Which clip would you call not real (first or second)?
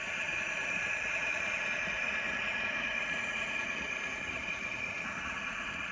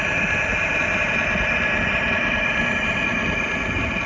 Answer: first